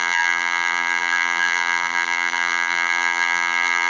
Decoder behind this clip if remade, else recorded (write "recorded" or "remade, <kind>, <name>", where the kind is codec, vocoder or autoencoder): remade, vocoder, BigVGAN v2